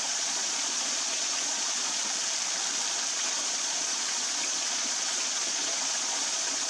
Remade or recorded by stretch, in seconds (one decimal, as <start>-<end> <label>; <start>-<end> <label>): 0.0-2.0 remade; 2.0-3.1 recorded; 3.1-6.7 remade